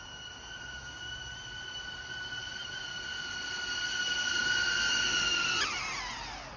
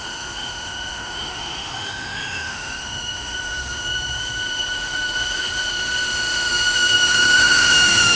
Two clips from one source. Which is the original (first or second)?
first